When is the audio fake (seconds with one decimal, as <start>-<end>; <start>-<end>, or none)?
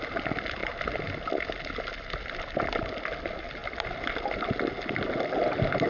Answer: none